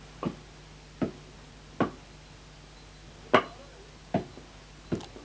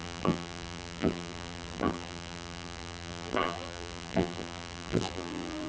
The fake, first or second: second